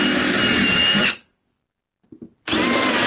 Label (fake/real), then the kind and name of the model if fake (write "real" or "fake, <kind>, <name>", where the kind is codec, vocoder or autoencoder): real